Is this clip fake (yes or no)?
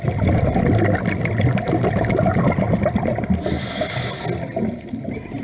no